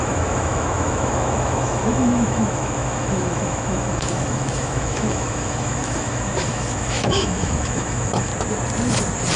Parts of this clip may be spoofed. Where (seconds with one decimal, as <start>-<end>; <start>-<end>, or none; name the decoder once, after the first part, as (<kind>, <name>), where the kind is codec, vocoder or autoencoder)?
0.0-8.3 (autoencoder, DAC-VAE)